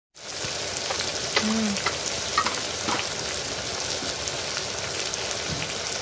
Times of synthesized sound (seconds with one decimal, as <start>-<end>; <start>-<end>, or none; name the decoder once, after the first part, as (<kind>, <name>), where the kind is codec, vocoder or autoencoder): none